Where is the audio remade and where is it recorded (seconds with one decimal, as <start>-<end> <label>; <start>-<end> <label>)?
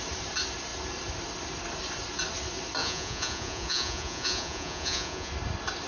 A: 0.0-2.8 recorded; 2.8-5.3 remade; 5.3-5.9 recorded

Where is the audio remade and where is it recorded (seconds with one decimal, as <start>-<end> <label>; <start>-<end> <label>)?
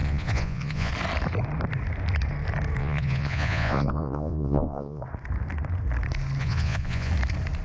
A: 0.0-0.9 remade; 0.9-2.8 recorded; 2.8-5.0 remade; 5.0-6.4 recorded; 6.4-7.1 remade; 7.1-7.6 recorded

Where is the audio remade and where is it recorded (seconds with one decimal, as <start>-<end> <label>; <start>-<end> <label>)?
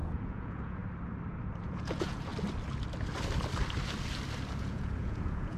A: 0.0-0.8 remade; 0.8-1.6 recorded; 1.6-2.3 remade; 2.3-4.6 recorded; 4.6-5.6 remade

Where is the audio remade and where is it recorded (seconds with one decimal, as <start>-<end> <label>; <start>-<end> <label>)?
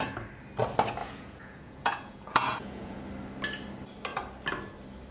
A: 0.0-1.0 recorded; 1.0-3.0 remade; 3.0-5.1 recorded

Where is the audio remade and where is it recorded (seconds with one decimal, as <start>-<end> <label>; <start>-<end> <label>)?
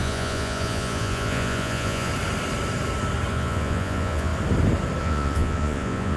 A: 0.0-2.1 remade; 2.1-3.3 recorded; 3.3-4.3 remade; 4.3-5.0 recorded; 5.0-6.2 remade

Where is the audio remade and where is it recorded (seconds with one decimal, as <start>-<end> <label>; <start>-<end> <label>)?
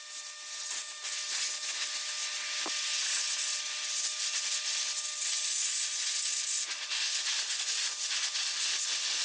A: 0.0-9.2 recorded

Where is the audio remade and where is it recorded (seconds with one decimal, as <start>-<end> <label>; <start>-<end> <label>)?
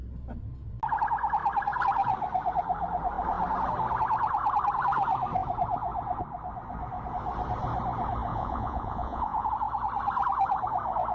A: 0.0-8.3 recorded; 8.3-9.5 remade; 9.5-11.1 recorded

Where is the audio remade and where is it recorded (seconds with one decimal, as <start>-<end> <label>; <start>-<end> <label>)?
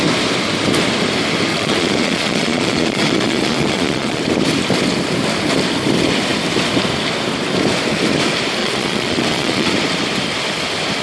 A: 0.0-1.5 recorded; 1.5-4.2 remade; 4.2-8.6 recorded; 8.6-9.7 remade; 9.7-11.0 recorded